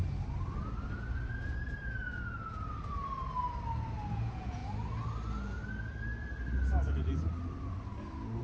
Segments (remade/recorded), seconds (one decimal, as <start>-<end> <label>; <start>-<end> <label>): 0.0-4.1 recorded; 4.1-4.6 remade; 4.6-8.4 recorded